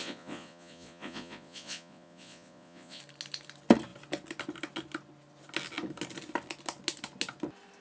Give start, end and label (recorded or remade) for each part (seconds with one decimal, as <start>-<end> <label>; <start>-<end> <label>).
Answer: 0.0-3.0 remade; 3.0-7.8 recorded